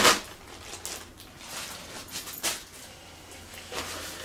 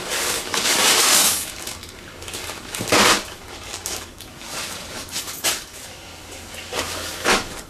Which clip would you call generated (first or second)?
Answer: second